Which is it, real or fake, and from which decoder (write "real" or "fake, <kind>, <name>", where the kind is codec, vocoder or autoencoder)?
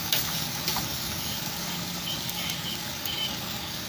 fake, codec, DAC